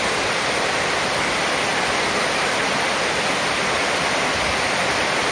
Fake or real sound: real